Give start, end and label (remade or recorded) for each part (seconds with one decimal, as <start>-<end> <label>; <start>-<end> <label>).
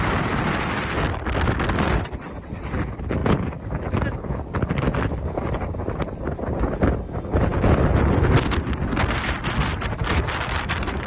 0.0-11.1 recorded